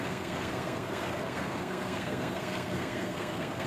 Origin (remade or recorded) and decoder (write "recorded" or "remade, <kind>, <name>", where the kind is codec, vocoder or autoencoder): remade, codec, SNAC